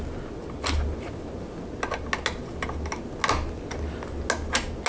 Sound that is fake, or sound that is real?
real